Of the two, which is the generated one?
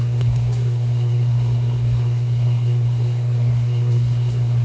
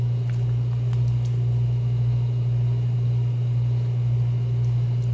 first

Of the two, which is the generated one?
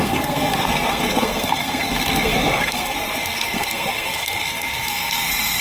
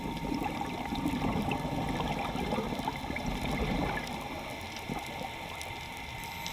first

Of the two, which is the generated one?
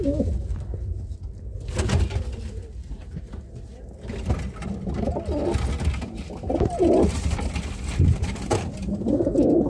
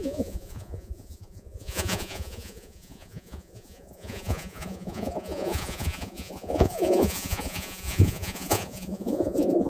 second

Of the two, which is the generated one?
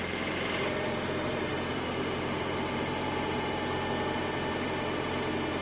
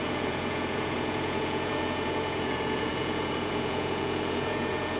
second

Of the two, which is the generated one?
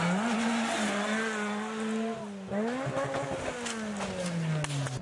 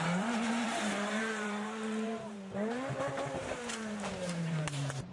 second